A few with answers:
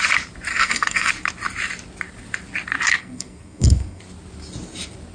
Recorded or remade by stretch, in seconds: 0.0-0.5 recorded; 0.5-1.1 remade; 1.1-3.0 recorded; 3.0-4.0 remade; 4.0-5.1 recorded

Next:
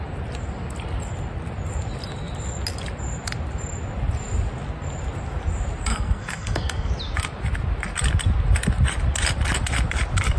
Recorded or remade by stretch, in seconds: 0.0-5.9 recorded; 5.9-6.9 remade; 6.9-10.4 recorded

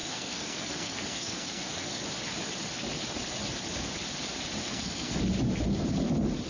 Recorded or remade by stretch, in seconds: 0.0-2.0 remade; 2.0-4.6 recorded; 4.6-5.2 remade; 5.2-6.5 recorded

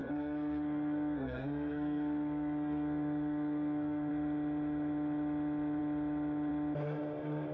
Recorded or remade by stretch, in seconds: 0.0-4.1 remade; 4.1-7.5 recorded

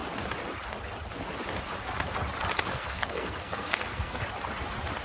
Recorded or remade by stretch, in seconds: 0.0-2.7 recorded; 2.7-4.2 remade; 4.2-5.0 recorded

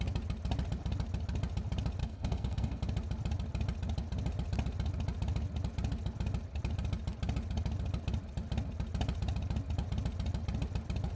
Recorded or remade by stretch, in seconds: 0.0-2.0 recorded; 2.0-2.8 remade; 2.8-11.2 recorded

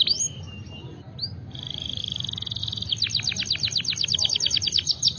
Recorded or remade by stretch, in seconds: 0.0-5.2 recorded

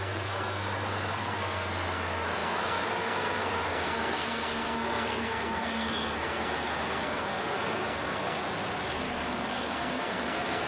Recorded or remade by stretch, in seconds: 0.0-8.4 remade; 8.4-8.9 recorded; 8.9-10.7 remade